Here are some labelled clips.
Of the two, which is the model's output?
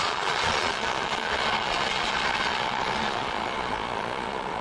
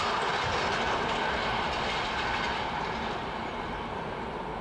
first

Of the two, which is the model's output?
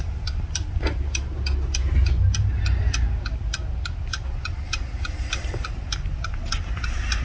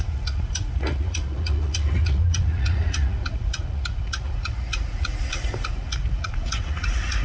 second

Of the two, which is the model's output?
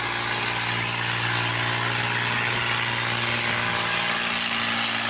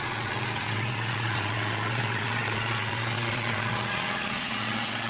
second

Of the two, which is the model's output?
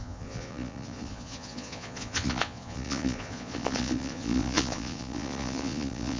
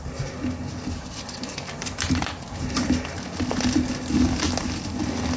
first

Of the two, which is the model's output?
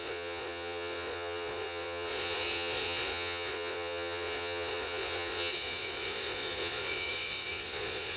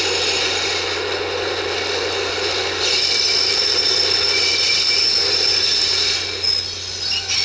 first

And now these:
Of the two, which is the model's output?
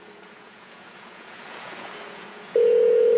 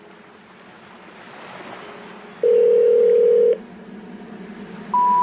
first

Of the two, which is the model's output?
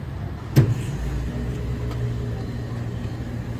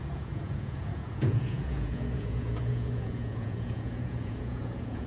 second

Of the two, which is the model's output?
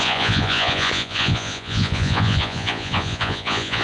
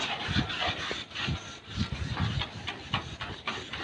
first